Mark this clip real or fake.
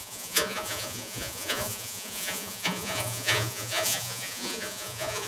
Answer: fake